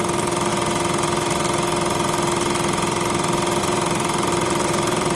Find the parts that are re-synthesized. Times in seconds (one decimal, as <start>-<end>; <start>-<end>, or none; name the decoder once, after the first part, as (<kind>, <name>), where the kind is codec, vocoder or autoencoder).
0.0-0.5 (vocoder, BigVGAN v2); 3.6-5.1